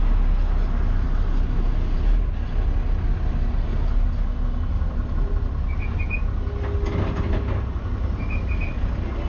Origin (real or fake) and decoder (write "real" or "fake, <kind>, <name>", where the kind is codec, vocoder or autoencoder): real